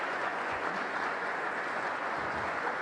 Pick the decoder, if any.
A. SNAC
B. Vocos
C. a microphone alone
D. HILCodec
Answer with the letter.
B